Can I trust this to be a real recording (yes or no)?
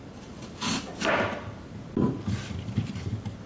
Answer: yes